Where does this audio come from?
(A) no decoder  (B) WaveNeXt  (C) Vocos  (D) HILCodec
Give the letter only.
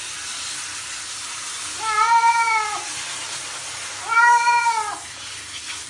A